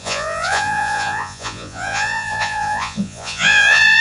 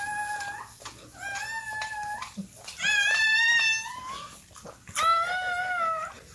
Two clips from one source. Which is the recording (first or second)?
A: second